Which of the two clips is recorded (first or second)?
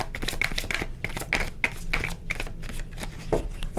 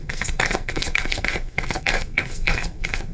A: first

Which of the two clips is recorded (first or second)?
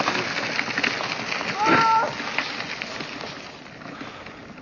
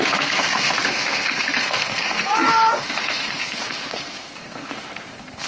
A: first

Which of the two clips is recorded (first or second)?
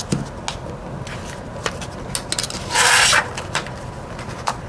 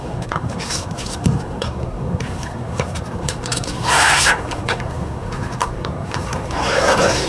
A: first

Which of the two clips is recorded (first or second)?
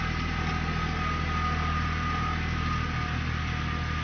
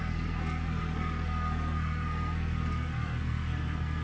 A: first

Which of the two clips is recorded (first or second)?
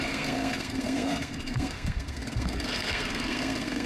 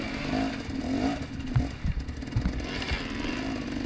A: second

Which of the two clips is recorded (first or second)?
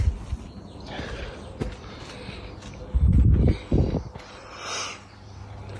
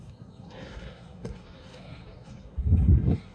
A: first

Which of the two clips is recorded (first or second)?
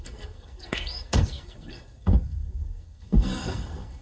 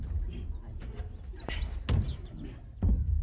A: second